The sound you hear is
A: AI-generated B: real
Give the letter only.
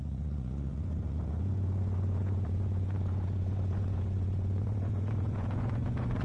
A